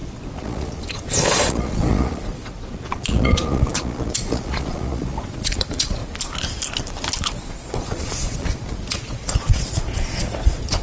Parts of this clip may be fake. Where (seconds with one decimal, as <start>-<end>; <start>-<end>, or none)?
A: 0.0-6.0; 7.4-10.8